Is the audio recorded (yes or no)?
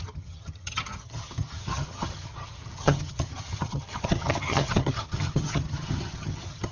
no